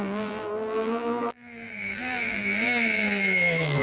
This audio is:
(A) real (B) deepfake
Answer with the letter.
B